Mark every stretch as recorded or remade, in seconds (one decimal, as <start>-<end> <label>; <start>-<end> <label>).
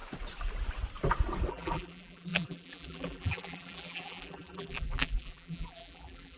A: 0.0-1.5 recorded; 1.5-6.4 remade